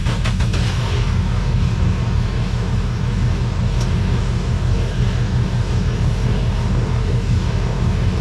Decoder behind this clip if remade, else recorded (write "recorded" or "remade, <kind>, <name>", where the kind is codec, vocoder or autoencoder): remade, codec, DAC